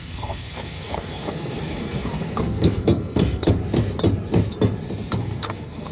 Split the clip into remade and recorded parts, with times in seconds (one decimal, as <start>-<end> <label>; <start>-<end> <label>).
0.0-3.6 remade; 3.6-5.2 recorded; 5.2-5.9 remade